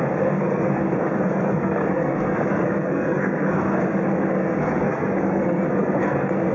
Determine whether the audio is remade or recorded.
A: remade